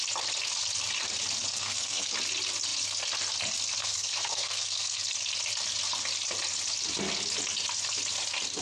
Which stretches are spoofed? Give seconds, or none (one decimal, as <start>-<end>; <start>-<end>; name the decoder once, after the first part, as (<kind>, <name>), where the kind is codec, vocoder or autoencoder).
1.5-2.1 (codec, SNAC); 3.8-5.0